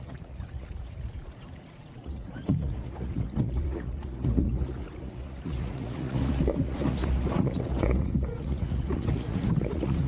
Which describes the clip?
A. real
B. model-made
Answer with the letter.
B